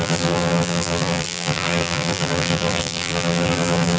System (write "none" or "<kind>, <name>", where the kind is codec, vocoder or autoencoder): vocoder, BigVGAN v2